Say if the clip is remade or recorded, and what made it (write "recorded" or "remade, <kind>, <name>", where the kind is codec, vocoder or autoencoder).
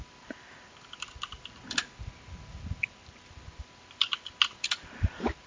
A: recorded